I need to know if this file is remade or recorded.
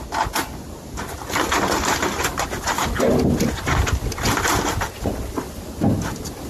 recorded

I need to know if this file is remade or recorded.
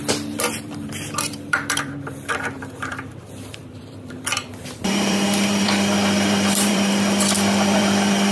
remade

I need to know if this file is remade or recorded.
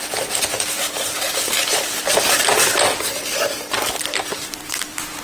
remade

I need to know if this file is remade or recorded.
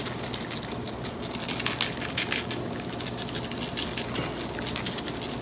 recorded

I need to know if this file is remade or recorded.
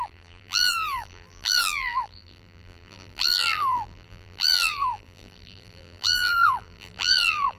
remade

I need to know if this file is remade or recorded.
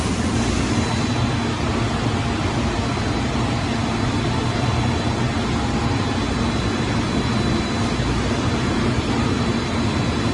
recorded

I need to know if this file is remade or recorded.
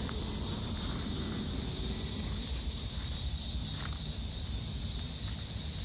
recorded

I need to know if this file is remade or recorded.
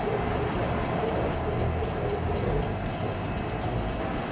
recorded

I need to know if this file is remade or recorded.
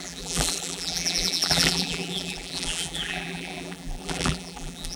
remade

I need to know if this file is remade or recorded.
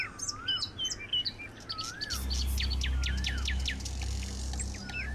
recorded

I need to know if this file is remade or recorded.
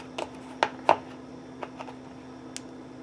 recorded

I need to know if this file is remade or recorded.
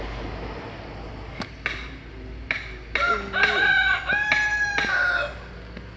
recorded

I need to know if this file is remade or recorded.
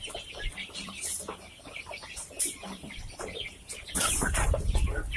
remade